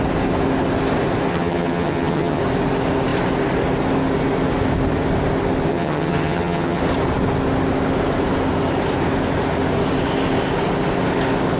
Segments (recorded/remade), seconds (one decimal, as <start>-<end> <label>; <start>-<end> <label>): 0.0-1.3 recorded; 1.3-2.4 remade; 2.4-5.7 recorded; 5.7-6.8 remade; 6.8-11.6 recorded